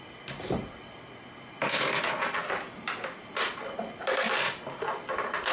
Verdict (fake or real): real